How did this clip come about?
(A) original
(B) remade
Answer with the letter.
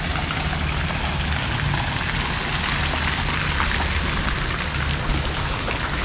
A